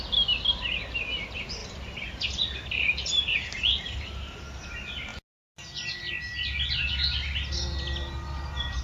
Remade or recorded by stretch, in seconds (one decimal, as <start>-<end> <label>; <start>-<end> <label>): 0.0-1.6 recorded; 1.6-4.1 remade; 4.1-8.8 recorded